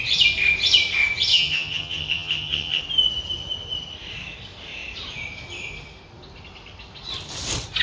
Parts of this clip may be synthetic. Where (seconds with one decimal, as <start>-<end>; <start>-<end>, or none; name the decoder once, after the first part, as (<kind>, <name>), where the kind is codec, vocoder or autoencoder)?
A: 1.3-2.8 (vocoder, HiFi-GAN)

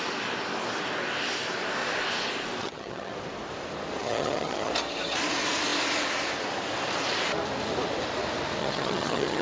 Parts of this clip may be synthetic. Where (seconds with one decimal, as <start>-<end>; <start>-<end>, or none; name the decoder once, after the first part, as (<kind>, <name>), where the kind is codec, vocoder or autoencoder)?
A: 2.6-3.1 (vocoder, HiFi-GAN); 4.0-4.7; 8.6-9.4

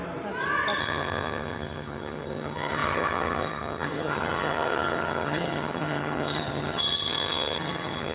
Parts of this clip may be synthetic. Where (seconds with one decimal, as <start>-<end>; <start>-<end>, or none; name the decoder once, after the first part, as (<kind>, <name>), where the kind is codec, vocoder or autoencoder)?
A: 0.8-8.1 (vocoder, HiFi-GAN)

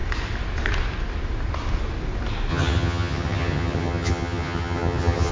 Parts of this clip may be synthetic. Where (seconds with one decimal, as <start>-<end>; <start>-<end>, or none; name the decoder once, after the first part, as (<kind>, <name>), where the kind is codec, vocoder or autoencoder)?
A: 2.5-5.3 (vocoder, HiFi-GAN)

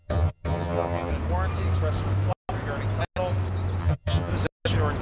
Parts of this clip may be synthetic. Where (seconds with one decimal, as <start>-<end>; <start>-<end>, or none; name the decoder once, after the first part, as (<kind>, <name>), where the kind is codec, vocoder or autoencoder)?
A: 0.0-1.1 (vocoder, HiFi-GAN); 3.8-4.3

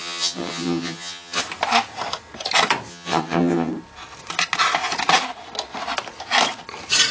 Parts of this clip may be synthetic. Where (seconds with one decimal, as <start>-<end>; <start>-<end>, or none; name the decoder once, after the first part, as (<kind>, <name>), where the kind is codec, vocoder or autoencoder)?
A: 0.0-1.4 (vocoder, HiFi-GAN); 2.9-3.7

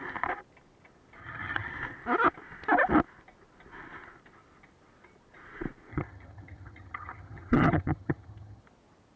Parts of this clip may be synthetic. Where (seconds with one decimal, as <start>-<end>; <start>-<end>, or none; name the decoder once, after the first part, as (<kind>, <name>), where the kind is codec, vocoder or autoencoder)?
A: 1.2-1.7 (vocoder, HiFi-GAN); 5.9-8.6